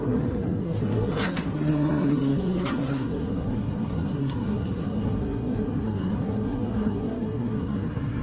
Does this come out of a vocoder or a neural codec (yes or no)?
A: yes